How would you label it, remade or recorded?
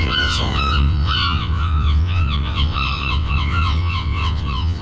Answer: remade